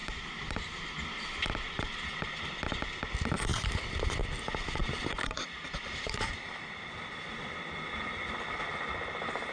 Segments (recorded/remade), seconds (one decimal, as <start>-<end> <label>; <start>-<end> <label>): 0.0-2.4 remade; 2.4-4.8 recorded; 4.8-8.7 remade; 8.7-9.5 recorded